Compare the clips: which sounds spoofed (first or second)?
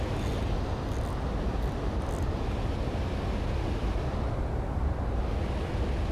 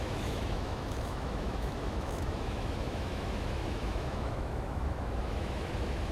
second